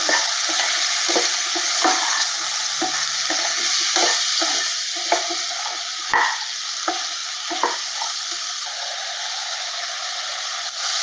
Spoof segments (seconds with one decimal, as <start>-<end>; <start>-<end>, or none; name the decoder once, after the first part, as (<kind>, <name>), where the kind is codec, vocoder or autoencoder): 7.2-10.4 (vocoder, BigVGAN v2)